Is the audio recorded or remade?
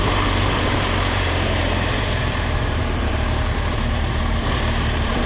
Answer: remade